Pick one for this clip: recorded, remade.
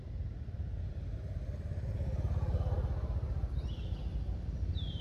recorded